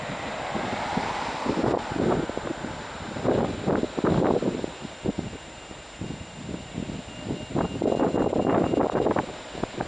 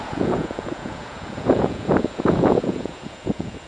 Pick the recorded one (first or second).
first